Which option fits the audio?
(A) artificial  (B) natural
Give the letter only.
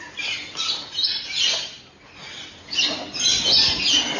B